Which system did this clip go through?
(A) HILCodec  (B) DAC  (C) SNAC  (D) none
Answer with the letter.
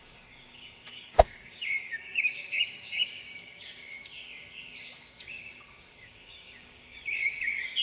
B